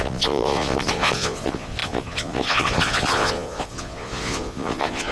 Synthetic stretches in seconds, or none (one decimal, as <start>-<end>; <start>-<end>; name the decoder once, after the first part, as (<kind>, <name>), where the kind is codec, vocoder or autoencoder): 0.0-5.1 (vocoder, Vocos)